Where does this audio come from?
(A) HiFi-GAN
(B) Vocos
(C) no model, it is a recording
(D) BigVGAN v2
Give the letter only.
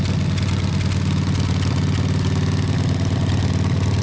C